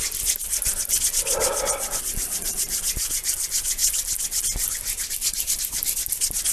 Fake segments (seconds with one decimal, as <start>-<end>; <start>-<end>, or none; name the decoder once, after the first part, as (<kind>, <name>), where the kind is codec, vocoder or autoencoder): none